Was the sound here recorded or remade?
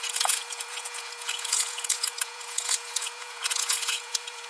remade